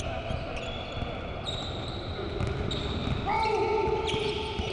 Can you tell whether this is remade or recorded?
recorded